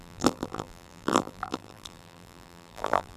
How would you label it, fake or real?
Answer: fake